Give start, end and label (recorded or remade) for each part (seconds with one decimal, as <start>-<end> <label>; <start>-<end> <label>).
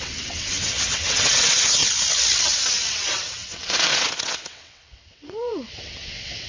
0.0-1.8 remade; 1.8-2.4 recorded; 2.4-6.5 remade